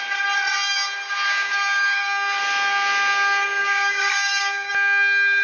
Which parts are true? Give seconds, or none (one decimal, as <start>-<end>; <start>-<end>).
0.0-1.3; 2.4-3.6; 4.7-5.4